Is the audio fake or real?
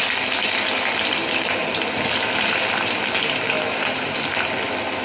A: real